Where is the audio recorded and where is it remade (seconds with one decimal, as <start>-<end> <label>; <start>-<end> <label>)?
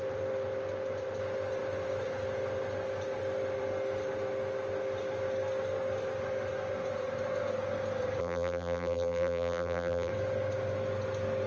0.0-8.2 recorded; 8.2-10.1 remade; 10.1-11.5 recorded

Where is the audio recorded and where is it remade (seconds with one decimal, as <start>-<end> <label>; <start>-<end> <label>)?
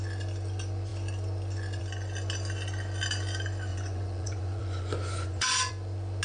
0.0-3.7 recorded; 3.7-5.7 remade; 5.7-6.2 recorded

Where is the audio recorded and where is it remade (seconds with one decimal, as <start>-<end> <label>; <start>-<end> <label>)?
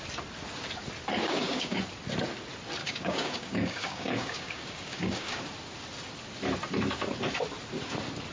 0.0-1.2 recorded; 1.2-1.8 remade; 1.8-2.8 recorded; 2.8-5.4 remade; 5.4-8.3 recorded